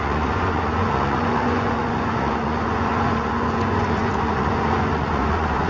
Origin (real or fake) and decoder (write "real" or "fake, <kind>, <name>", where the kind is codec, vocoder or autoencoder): fake, vocoder, Vocos